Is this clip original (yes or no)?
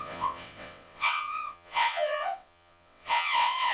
no